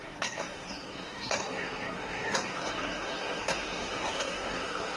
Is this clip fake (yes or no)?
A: yes